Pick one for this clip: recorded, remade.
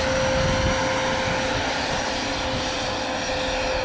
recorded